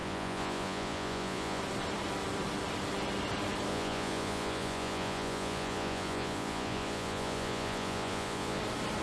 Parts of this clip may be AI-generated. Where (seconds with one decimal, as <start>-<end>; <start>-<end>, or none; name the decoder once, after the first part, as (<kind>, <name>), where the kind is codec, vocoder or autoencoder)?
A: 0.0-1.6 (vocoder, Vocos); 3.7-8.6